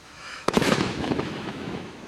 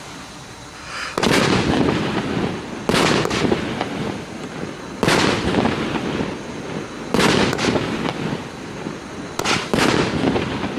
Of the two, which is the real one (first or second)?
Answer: second